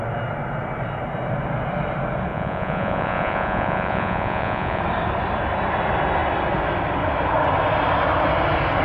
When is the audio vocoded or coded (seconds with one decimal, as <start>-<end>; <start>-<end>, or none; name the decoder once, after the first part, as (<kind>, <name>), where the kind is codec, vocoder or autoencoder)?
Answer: 2.3-4.8 (vocoder, Vocos)